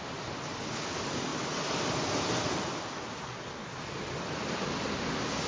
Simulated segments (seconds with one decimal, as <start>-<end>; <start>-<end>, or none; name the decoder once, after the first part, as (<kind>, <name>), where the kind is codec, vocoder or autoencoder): 0.0-3.6 (vocoder, BigVGAN v2)